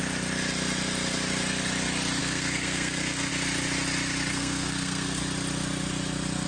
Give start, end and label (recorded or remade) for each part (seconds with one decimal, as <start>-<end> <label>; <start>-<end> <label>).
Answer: 0.0-2.2 recorded; 2.2-3.3 remade; 3.3-4.3 recorded; 4.3-5.2 remade; 5.2-6.5 recorded